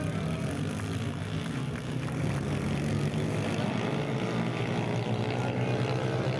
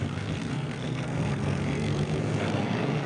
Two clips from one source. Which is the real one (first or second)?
first